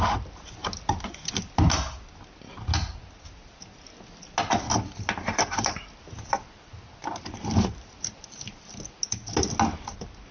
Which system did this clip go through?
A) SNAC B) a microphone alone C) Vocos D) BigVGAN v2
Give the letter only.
B